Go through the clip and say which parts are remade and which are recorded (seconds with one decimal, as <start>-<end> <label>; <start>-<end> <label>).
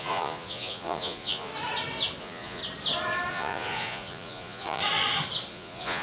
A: 0.0-1.5 remade; 1.5-2.2 recorded; 2.2-2.6 remade; 2.6-3.3 recorded; 3.3-4.8 remade; 4.8-5.5 recorded; 5.5-6.0 remade